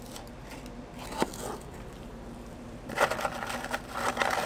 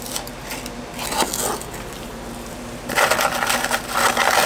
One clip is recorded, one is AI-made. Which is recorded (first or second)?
second